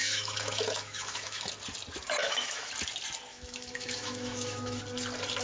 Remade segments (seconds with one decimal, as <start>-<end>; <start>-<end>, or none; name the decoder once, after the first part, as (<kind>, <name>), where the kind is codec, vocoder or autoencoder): 0.0-1.5 (autoencoder, DAC-VAE); 2.2-2.7; 3.3-4.8